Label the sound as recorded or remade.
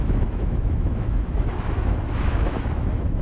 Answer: remade